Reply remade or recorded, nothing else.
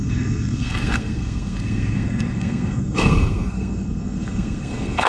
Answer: remade